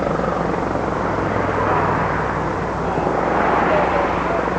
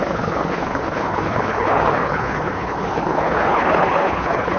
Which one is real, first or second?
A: first